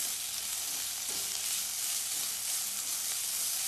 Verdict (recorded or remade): recorded